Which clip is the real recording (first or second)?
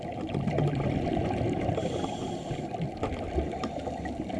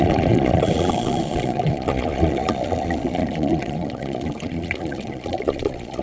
first